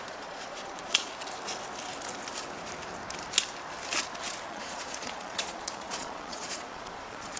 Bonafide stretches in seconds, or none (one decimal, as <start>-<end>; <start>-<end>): 1.1-4.4